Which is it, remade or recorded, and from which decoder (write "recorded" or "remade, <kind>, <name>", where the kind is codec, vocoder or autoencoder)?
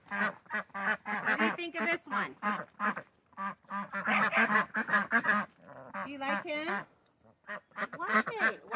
recorded